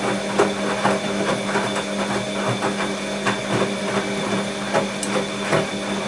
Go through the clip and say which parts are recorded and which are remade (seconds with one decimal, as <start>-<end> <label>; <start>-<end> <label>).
0.0-6.1 recorded